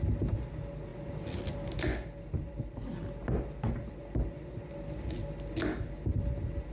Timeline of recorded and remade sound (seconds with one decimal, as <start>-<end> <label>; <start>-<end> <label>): 0.0-6.7 recorded